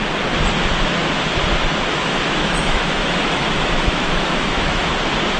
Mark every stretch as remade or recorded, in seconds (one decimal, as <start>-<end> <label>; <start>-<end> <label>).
0.0-1.9 recorded; 1.9-4.9 remade; 4.9-5.4 recorded